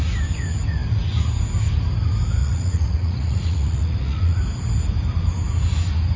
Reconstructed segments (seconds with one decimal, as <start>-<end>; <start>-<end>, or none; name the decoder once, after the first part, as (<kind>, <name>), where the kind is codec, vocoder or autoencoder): 2.4-4.4 (vocoder, Vocos)